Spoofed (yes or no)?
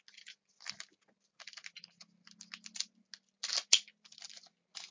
no